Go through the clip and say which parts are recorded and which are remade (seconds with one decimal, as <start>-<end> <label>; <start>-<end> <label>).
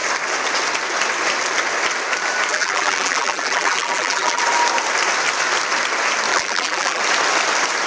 0.0-2.5 recorded; 2.5-4.4 remade; 4.4-6.3 recorded; 6.3-7.0 remade; 7.0-7.9 recorded